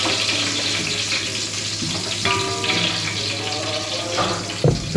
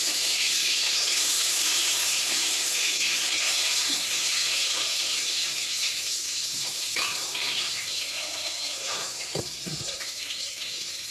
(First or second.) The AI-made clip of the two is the second